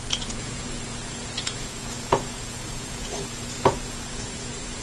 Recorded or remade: remade